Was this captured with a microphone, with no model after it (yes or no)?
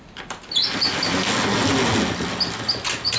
yes